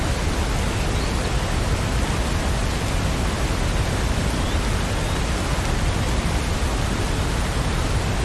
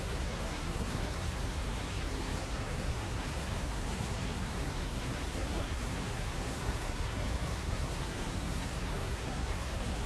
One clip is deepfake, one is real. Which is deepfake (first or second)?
second